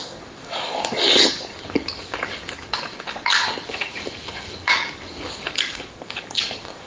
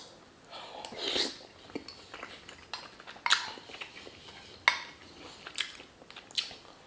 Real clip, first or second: second